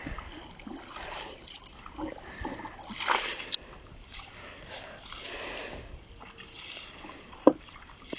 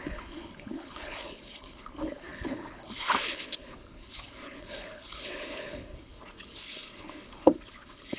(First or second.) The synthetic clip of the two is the second